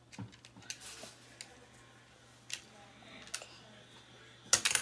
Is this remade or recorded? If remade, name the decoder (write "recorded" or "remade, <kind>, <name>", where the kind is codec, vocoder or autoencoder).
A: recorded